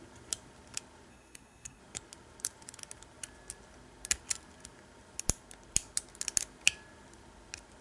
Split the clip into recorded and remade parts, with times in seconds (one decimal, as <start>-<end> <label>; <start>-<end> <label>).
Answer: 0.0-1.1 recorded; 1.1-1.8 remade; 1.8-7.8 recorded